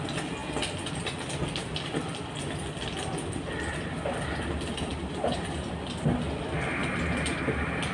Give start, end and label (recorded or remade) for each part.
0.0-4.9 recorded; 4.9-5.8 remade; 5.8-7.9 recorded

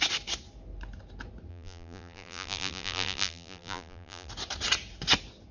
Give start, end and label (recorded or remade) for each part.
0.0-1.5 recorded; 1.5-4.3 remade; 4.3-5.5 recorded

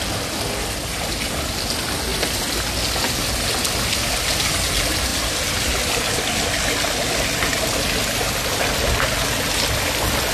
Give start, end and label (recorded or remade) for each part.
0.0-10.3 recorded

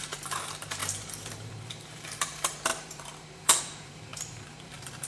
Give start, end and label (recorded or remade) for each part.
0.0-5.1 remade

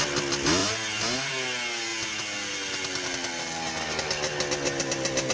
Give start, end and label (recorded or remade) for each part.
0.0-5.3 recorded